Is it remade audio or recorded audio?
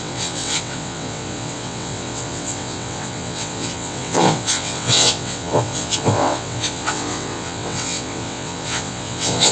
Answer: remade